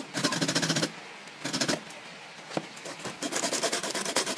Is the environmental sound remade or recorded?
recorded